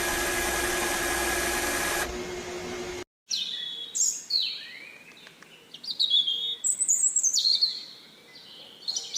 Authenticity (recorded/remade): recorded